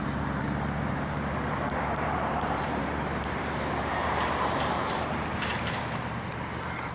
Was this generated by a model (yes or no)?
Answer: yes